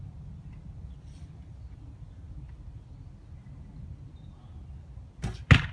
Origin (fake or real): real